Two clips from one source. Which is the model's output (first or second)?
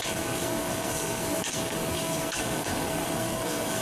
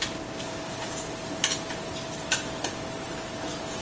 first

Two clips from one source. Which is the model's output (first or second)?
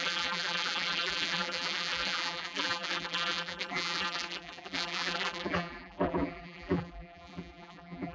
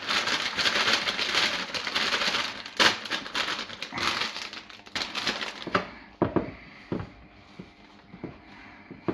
first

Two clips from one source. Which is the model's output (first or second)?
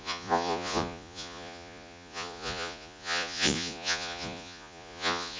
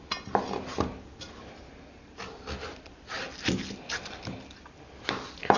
first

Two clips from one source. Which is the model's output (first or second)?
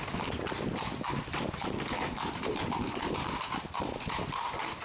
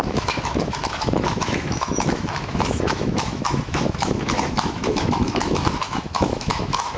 second